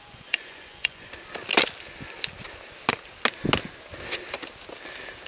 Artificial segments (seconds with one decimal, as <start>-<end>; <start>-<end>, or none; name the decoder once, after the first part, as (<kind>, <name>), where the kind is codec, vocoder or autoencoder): 0.0-1.1 (vocoder, Vocos)